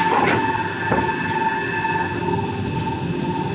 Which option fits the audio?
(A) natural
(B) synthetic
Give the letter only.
A